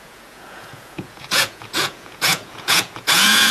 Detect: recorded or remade remade